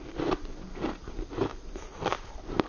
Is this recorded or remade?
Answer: remade